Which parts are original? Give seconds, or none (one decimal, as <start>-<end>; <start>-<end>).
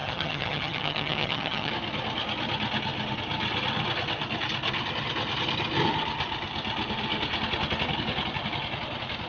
1.7-9.3